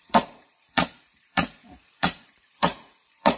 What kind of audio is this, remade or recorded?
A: remade